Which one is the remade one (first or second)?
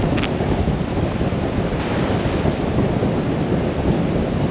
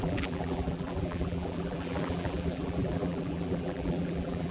second